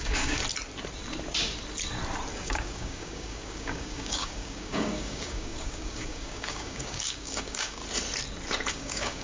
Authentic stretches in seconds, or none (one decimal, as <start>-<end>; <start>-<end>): 0.4-2.3; 7.8-8.7